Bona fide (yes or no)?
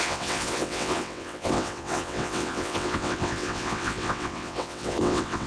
no